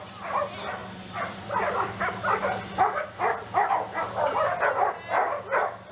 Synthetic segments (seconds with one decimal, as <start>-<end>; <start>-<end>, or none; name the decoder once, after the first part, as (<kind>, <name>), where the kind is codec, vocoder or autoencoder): none